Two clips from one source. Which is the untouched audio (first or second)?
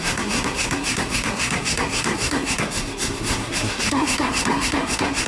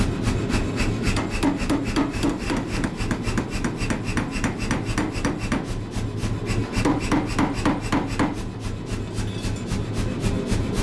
second